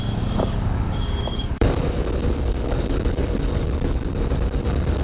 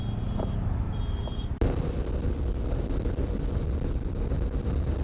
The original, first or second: second